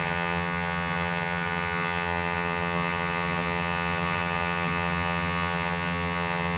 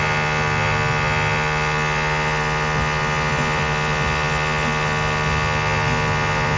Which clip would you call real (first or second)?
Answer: second